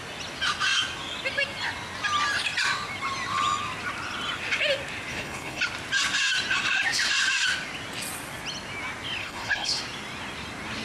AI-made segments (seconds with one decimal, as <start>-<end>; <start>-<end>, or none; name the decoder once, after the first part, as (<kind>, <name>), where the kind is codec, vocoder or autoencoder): 5.1-5.6 (codec, HILCodec); 9.2-9.8